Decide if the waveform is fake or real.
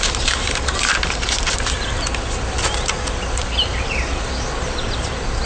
real